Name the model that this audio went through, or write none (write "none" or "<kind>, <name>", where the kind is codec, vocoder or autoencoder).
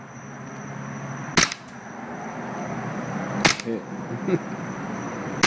none